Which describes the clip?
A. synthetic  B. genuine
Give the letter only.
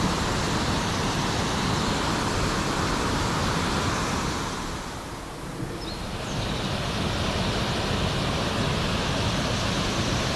B